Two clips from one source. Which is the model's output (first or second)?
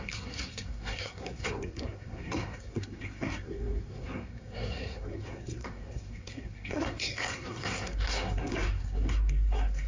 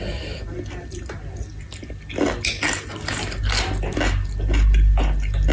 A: first